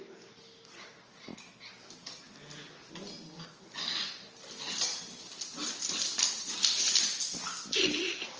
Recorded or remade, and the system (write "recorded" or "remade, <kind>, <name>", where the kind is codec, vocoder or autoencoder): recorded